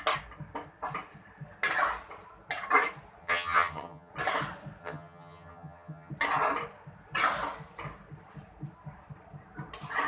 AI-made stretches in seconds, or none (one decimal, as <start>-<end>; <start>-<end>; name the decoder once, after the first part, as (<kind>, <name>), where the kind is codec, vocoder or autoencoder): 3.2-4.1 (vocoder, HiFi-GAN); 4.8-6.1